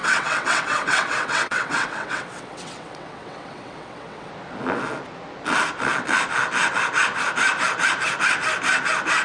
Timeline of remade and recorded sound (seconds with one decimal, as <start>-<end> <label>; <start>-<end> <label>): 0.0-4.3 remade; 4.3-9.2 recorded